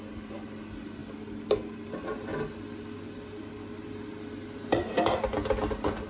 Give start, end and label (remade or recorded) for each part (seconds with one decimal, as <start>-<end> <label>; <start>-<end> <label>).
0.0-6.1 recorded